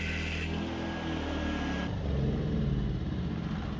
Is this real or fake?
real